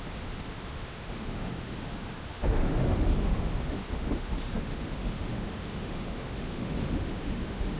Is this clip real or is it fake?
fake